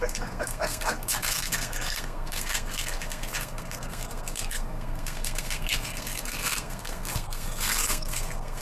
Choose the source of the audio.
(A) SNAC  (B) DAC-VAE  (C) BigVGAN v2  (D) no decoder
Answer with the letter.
A